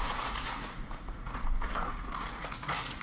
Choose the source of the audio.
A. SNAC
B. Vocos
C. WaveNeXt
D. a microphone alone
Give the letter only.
B